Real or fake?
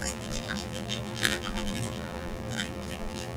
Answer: fake